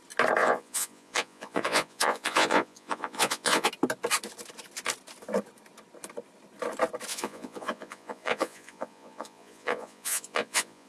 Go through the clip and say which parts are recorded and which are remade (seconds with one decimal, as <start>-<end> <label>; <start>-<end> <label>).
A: 0.0-0.4 recorded; 0.4-3.7 remade; 3.7-7.1 recorded; 7.1-10.9 remade